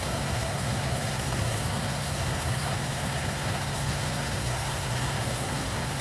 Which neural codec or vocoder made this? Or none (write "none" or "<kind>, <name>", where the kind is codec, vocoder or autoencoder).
codec, SNAC